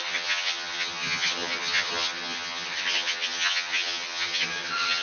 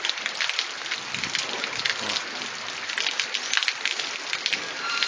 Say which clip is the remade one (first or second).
first